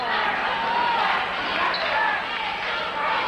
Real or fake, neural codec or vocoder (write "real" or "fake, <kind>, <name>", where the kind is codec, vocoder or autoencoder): real